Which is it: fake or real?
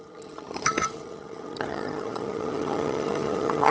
fake